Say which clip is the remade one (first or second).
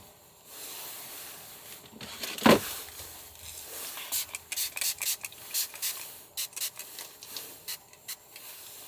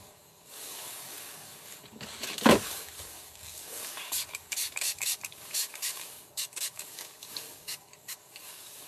second